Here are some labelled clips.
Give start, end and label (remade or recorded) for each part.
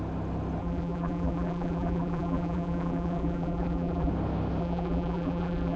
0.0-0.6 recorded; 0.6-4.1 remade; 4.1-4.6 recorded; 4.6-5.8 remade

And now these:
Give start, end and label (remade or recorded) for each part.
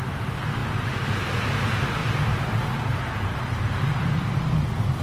0.0-0.6 recorded; 0.6-1.5 remade; 1.5-2.0 recorded; 2.0-4.3 remade; 4.3-5.0 recorded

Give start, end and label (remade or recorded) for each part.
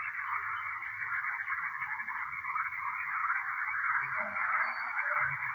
0.0-3.2 recorded; 3.2-4.8 remade; 4.8-5.5 recorded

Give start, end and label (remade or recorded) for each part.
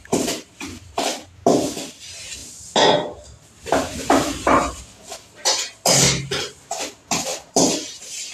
0.0-7.3 recorded; 7.3-8.3 remade